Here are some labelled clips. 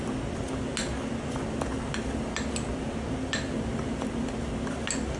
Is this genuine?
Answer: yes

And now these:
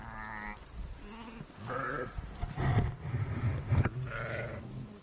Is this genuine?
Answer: yes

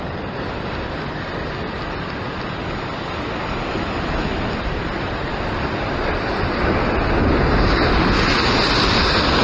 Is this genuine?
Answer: yes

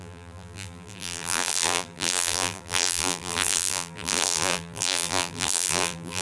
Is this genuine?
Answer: no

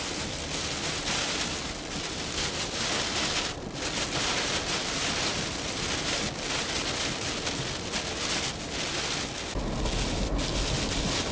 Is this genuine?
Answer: yes